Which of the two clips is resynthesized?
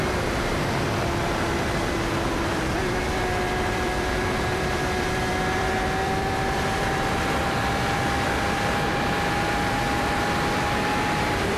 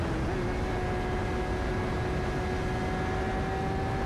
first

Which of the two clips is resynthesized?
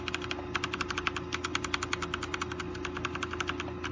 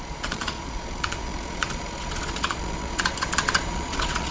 second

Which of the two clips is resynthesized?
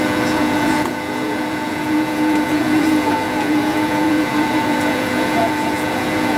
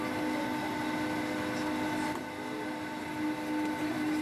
first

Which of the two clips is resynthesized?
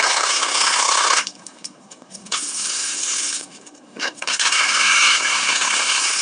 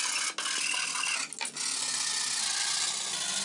first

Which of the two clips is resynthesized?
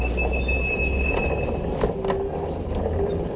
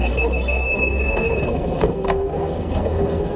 second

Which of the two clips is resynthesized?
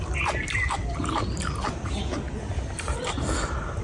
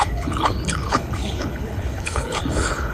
second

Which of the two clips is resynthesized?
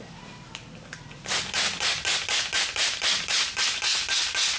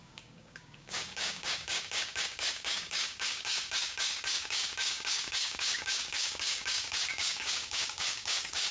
second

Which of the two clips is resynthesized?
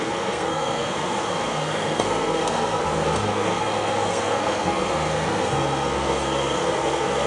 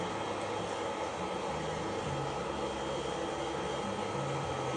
first